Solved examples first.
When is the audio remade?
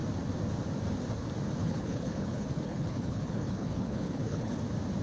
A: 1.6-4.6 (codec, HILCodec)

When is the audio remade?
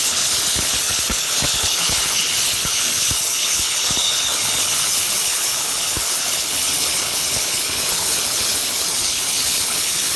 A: 0.0-10.2 (codec, HILCodec)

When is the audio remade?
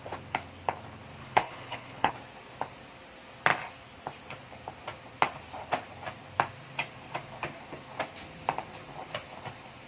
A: 1.2-2.1 (codec, HILCodec)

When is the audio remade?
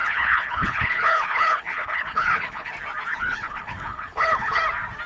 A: 0.0-2.7 (codec, HILCodec); 3.1-4.6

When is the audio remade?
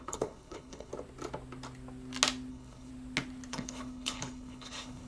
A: 0.0-0.9 (codec, HILCodec); 2.5-2.9; 3.5-5.1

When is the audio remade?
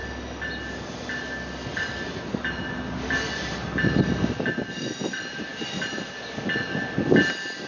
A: none